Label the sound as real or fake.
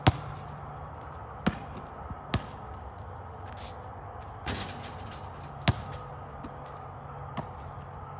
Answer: real